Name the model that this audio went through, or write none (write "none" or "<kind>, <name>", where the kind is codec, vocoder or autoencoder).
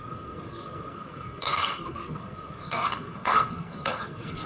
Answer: codec, SNAC